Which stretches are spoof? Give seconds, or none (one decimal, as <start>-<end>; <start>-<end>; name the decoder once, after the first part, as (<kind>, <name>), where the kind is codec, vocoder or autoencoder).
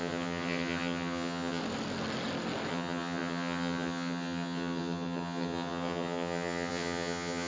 0.0-1.6 (vocoder, HiFi-GAN); 2.7-7.5